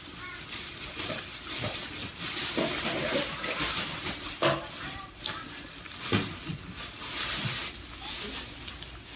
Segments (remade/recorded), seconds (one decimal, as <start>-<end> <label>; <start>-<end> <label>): 0.0-9.2 recorded